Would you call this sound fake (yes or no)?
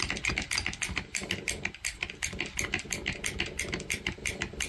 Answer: no